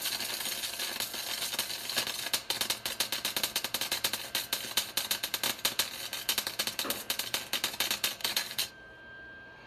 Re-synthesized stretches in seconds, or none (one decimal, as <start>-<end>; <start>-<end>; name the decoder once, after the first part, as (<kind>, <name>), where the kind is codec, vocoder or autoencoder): 8.2-8.7 (codec, DAC)